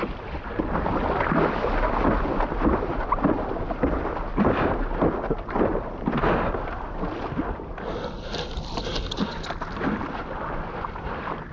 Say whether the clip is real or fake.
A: real